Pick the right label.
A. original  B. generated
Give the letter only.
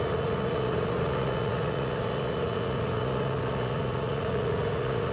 B